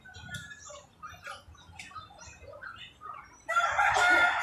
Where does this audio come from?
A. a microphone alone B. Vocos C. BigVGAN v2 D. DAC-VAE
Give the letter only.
A